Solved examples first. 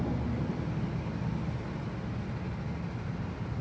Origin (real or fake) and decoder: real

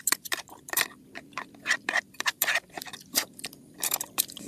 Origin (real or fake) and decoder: fake, vocoder, BigVGAN v2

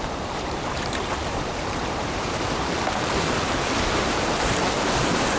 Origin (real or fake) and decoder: fake, vocoder, BigVGAN v2